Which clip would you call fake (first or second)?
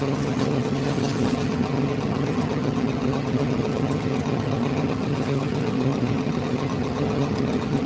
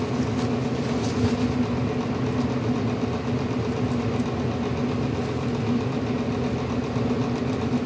first